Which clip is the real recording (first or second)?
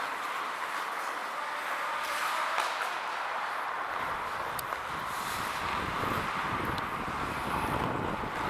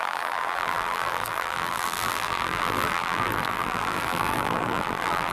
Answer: first